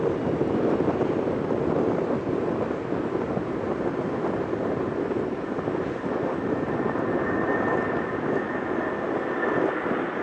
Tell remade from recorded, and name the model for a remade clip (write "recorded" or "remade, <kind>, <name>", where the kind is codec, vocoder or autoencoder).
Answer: recorded